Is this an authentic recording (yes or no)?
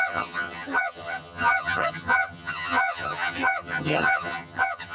no